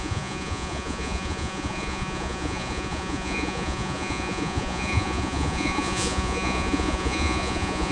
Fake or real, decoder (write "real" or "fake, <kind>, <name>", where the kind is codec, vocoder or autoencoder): fake, vocoder, Vocos